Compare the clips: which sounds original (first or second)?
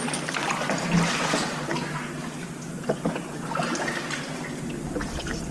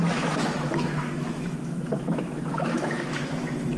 first